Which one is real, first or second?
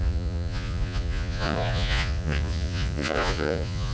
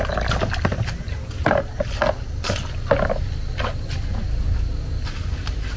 second